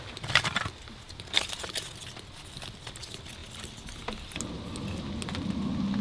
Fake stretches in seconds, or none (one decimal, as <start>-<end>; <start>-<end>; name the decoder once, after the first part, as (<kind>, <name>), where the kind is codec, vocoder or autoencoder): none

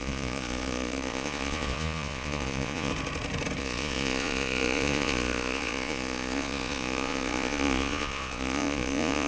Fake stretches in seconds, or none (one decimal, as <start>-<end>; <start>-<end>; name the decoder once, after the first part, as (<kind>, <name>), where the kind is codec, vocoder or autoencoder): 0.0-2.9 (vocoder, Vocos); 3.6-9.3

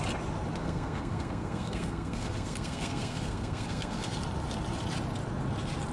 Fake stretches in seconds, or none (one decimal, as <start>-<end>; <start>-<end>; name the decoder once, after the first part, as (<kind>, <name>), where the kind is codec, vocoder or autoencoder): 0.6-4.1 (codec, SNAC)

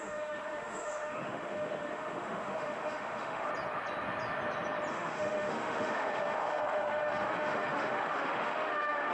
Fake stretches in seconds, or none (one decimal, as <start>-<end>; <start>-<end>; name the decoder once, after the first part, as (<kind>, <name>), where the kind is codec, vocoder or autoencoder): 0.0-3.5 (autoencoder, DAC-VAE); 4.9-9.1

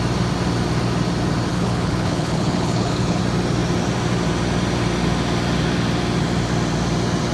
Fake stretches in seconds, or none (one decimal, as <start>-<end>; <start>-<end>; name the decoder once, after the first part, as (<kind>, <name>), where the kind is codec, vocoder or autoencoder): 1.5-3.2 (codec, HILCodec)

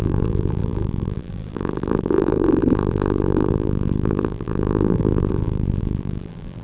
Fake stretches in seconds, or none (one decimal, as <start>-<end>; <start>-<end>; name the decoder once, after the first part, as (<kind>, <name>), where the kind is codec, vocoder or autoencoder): 0.0-6.6 (vocoder, BigVGAN v2)

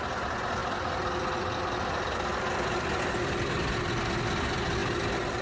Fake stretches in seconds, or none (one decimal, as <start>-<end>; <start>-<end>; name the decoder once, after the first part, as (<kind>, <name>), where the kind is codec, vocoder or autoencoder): none